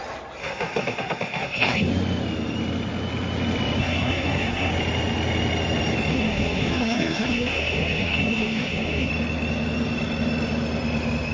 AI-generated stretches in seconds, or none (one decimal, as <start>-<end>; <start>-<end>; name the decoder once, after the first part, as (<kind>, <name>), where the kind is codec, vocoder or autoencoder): 0.4-1.9 (codec, SNAC); 3.8-4.7; 6.1-9.1